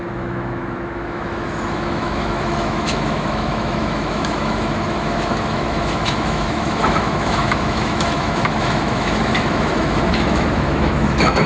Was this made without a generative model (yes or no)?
no